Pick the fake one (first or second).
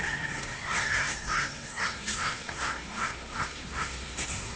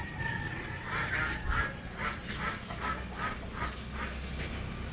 first